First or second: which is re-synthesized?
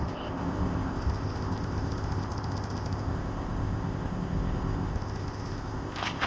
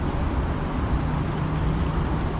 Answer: first